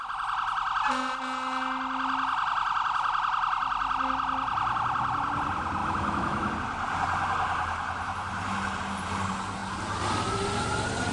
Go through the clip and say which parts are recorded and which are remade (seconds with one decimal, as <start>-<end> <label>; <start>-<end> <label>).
0.0-5.8 recorded; 5.8-6.5 remade; 6.5-11.1 recorded